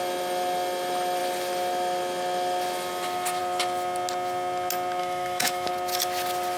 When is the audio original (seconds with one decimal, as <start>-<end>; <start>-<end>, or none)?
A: 0.0-5.0; 5.7-6.6